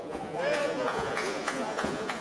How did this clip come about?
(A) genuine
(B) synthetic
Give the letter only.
B